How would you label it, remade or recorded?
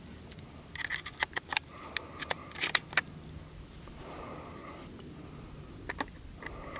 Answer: recorded